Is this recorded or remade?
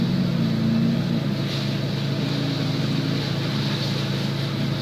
recorded